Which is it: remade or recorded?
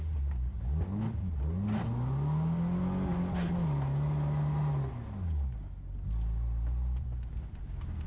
recorded